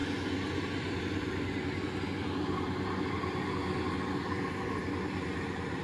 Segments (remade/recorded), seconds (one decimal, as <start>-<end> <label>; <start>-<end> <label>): 0.0-5.8 recorded